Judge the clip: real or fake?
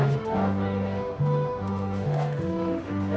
fake